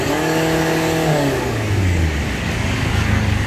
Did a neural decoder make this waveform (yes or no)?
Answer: yes